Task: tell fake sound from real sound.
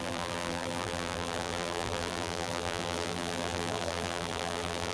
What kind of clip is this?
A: fake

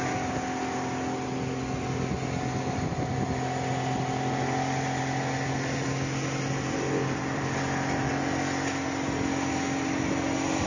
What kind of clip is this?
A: real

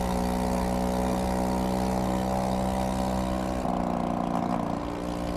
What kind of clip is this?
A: real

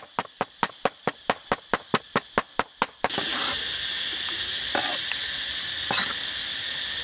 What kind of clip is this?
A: real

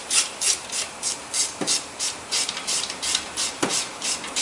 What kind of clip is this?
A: fake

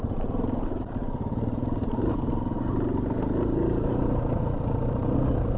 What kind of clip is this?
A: fake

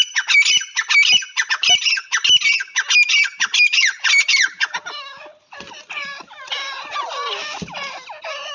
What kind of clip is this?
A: real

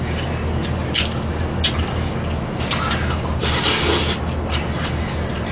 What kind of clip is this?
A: real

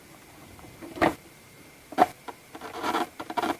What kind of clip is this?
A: fake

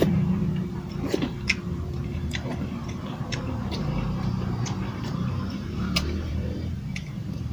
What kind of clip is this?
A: fake